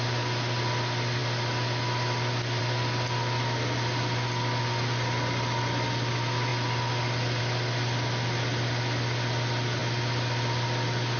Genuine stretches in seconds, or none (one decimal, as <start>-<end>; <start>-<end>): 0.0-11.2